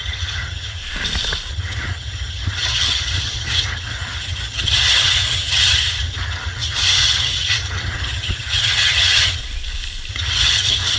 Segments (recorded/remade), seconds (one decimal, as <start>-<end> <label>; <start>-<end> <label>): 0.0-0.8 remade; 0.8-1.5 recorded; 1.5-9.4 remade; 9.4-10.1 recorded; 10.1-11.0 remade